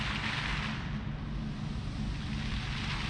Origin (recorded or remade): recorded